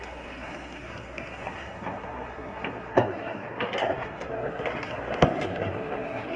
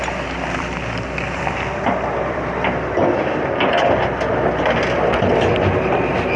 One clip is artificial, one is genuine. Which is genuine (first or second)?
second